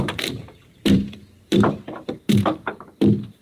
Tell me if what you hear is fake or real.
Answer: fake